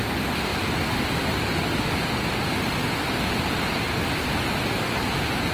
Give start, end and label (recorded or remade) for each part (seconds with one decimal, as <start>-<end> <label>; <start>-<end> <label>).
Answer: 0.0-5.5 recorded